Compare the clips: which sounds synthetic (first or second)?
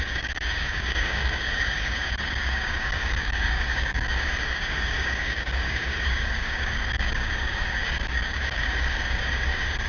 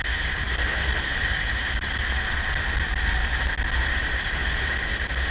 first